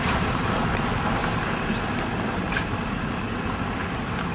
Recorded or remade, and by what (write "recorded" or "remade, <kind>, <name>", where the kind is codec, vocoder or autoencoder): recorded